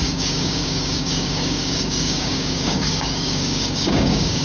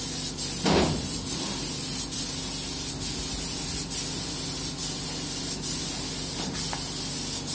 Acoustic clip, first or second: second